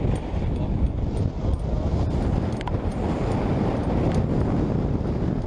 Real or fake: real